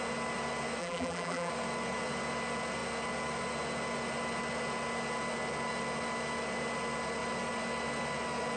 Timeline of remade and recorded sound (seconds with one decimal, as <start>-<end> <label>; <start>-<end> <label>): 0.0-0.8 recorded; 0.8-1.5 remade; 1.5-8.6 recorded